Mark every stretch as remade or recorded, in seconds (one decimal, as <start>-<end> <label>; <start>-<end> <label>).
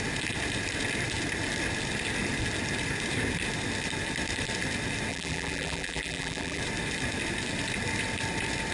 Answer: 0.0-5.1 recorded; 5.1-6.6 remade; 6.6-8.7 recorded